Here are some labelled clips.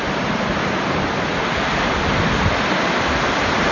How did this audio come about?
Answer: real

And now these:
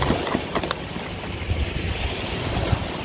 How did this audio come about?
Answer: real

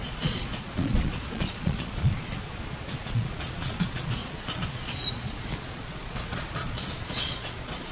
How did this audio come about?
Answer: fake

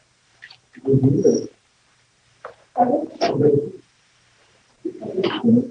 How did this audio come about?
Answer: fake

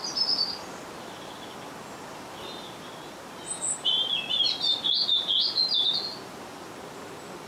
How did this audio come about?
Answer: real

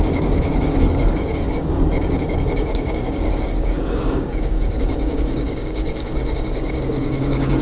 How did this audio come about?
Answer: fake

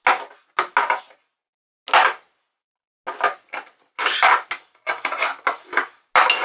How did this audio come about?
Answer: real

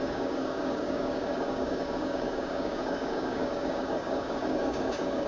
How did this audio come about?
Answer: fake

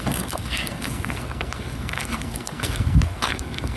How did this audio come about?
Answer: fake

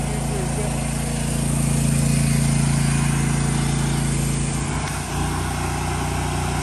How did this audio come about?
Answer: real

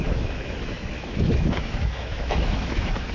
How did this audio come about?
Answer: fake